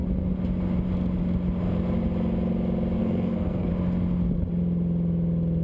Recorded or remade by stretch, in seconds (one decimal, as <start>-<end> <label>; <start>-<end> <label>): 0.0-3.0 recorded; 3.0-3.7 remade; 3.7-5.6 recorded